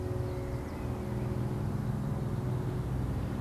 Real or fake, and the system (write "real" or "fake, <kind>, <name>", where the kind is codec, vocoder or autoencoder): real